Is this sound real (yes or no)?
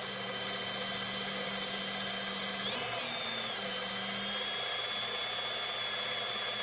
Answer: yes